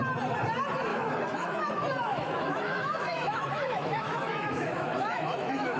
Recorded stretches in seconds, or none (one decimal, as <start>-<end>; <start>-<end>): 0.0-0.9; 1.7-2.1